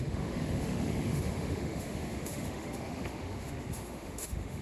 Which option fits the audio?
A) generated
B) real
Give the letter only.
A